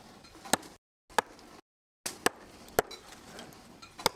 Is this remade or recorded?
recorded